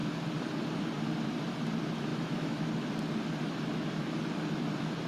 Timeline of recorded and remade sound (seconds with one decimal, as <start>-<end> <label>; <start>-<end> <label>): 0.0-2.1 recorded; 2.1-2.7 remade; 2.7-5.1 recorded